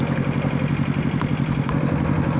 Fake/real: real